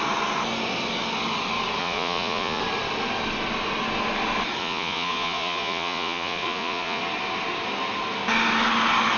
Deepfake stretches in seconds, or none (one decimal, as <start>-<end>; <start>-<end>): 1.8-2.6; 4.6-7.0